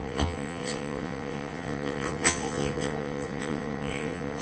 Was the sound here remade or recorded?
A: remade